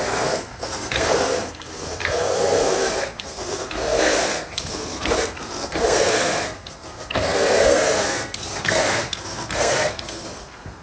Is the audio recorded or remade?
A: remade